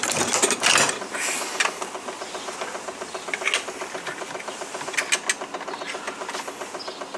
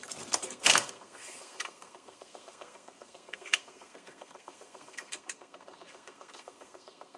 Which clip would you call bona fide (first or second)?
first